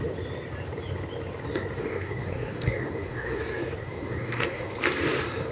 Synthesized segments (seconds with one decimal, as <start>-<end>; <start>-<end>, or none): 1.8-3.4; 3.8-4.8